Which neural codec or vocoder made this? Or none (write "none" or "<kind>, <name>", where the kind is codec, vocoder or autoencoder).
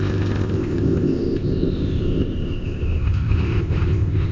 codec, ZipCodec